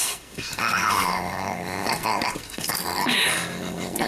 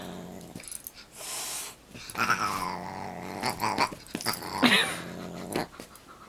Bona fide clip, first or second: second